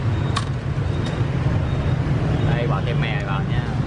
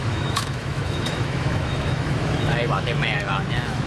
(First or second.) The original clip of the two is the first